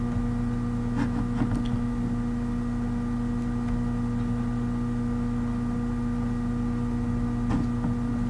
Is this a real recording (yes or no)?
yes